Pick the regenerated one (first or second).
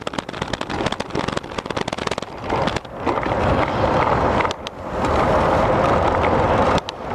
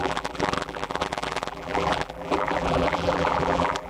second